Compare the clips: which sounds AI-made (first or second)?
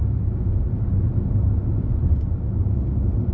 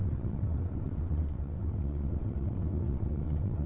second